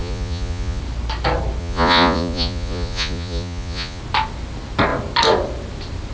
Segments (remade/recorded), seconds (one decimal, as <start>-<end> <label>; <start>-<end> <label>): 0.0-0.8 remade; 0.8-1.6 recorded; 1.6-4.0 remade; 4.0-6.1 recorded